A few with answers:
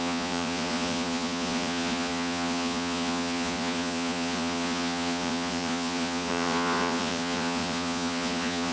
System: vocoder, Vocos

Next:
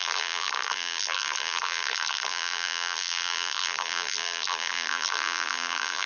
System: vocoder, BigVGAN v2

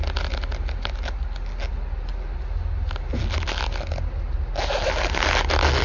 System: none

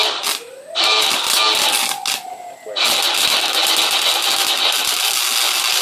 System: none